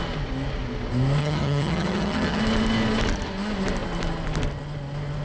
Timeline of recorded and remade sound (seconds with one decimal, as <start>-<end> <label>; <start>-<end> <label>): 0.0-1.2 recorded; 1.2-2.4 remade; 2.4-5.2 recorded